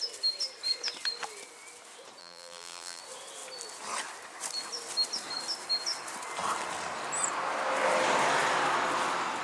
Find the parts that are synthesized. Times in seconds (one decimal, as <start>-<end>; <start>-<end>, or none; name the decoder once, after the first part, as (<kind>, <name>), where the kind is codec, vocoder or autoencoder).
2.2-3.0 (vocoder, BigVGAN v2)